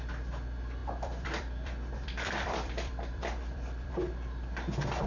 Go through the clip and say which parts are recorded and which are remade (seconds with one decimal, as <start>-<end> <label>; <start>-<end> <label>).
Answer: 0.0-0.8 recorded; 0.8-3.9 remade; 3.9-5.1 recorded